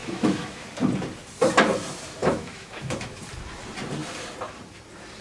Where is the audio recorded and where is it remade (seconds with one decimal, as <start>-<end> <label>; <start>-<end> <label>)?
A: 0.0-0.7 remade; 0.7-2.2 recorded; 2.2-3.2 remade; 3.2-5.2 recorded